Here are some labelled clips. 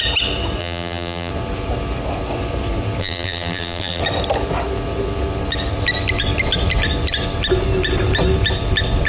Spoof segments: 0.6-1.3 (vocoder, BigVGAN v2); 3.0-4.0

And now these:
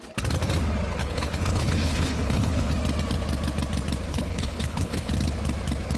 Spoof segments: 1.0-2.7 (codec, HILCodec); 4.1-5.1

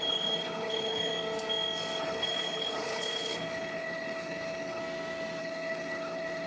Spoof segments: 0.0-1.1 (codec, HILCodec); 2.0-4.8; 5.4-6.5

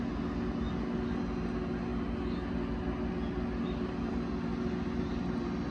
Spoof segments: none